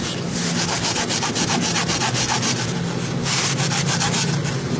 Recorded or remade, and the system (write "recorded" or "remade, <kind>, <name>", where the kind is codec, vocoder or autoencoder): recorded